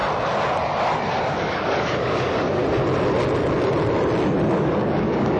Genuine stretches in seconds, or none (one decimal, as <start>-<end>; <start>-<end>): 0.0-1.2; 2.6-4.5